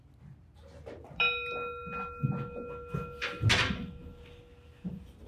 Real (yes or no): yes